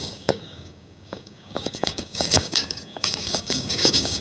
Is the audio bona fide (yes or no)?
no